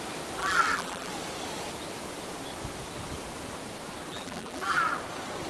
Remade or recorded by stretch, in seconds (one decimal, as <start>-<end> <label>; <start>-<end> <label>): 0.0-0.4 recorded; 0.4-1.1 remade; 1.1-4.1 recorded; 4.1-4.8 remade; 4.8-5.5 recorded